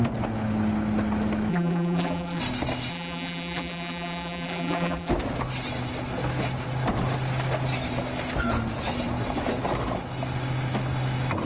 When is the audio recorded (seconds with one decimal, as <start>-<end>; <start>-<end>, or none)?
0.0-1.5; 2.4-2.9; 5.1-11.5